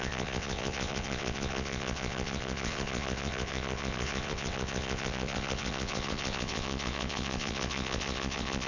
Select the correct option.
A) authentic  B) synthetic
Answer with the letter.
B